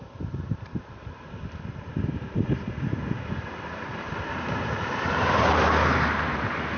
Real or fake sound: fake